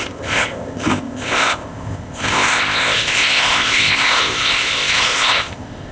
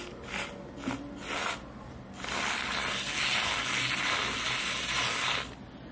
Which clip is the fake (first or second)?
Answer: first